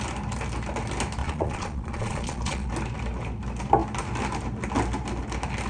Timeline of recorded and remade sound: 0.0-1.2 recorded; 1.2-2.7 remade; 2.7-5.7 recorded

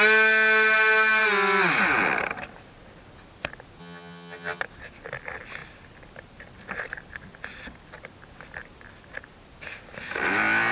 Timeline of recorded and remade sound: 0.0-3.8 recorded; 3.8-4.6 remade; 4.6-10.7 recorded